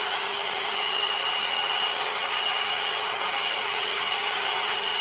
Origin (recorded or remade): remade